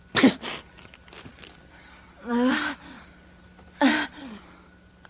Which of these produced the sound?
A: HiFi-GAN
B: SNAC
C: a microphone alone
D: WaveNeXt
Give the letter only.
C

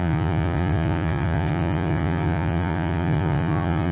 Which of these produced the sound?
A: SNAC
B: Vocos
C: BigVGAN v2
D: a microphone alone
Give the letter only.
B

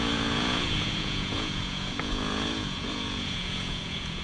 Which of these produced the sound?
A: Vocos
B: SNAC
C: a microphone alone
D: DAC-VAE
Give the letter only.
A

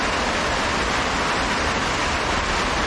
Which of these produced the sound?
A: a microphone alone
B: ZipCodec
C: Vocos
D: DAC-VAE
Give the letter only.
A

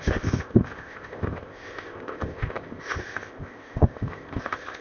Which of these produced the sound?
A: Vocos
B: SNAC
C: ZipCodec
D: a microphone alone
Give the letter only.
C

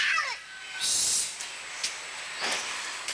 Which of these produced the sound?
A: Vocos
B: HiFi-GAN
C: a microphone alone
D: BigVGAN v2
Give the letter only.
C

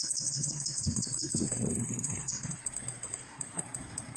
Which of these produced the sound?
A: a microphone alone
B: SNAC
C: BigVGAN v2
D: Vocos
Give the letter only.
B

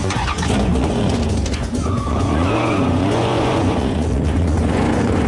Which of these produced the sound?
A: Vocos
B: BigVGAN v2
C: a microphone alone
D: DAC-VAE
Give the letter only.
A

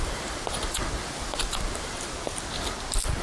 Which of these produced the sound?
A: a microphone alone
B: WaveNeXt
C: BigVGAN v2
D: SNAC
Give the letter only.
A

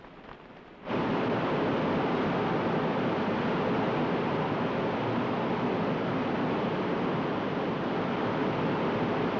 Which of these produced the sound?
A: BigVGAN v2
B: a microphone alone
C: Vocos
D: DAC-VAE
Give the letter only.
B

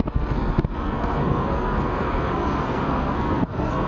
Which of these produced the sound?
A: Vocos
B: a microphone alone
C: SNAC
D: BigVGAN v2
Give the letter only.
C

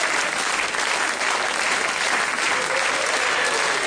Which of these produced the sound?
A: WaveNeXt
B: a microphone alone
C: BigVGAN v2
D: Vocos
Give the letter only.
B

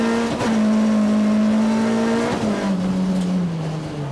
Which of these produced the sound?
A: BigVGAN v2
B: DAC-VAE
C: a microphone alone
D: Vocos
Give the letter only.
C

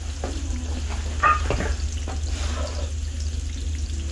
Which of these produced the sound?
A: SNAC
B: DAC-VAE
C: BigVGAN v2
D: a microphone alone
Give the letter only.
D